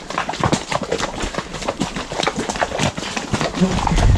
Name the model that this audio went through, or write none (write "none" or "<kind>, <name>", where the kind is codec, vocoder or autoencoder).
none